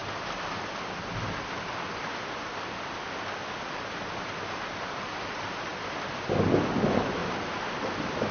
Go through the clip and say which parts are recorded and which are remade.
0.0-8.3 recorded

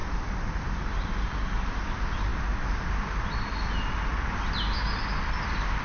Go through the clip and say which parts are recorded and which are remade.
0.0-5.8 recorded